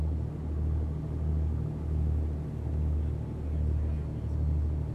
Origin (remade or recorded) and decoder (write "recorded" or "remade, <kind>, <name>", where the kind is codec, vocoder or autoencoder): recorded